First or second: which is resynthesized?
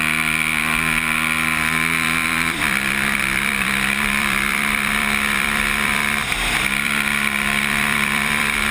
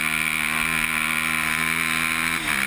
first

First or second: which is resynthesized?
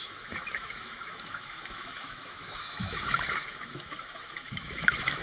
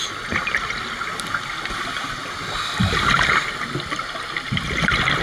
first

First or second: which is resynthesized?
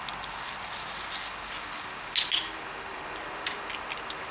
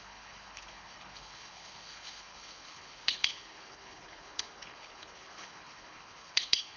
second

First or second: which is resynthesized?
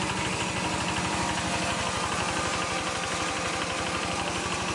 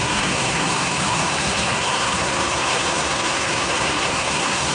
second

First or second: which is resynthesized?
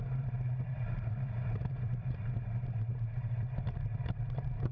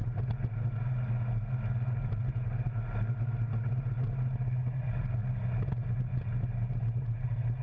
first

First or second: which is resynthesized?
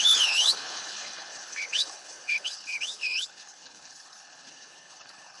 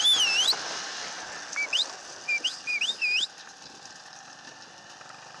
first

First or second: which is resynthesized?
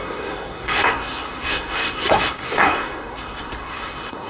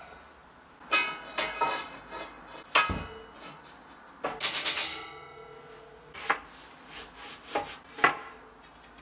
first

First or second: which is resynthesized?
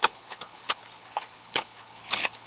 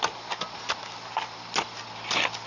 first